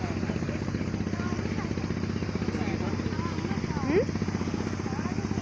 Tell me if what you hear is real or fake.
real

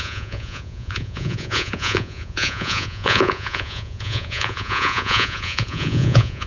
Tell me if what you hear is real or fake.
fake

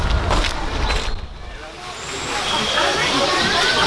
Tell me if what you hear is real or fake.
real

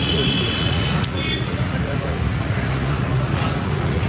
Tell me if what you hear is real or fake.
fake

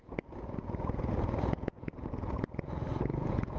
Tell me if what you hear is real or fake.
fake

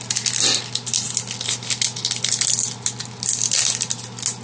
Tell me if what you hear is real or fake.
real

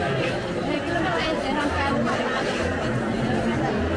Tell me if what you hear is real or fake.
real